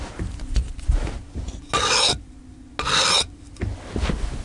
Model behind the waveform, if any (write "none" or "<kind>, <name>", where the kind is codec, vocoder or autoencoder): none